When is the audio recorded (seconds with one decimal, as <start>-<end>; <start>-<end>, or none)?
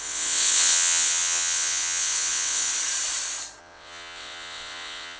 2.7-3.6